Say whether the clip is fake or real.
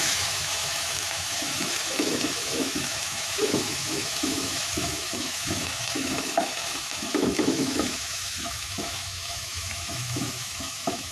fake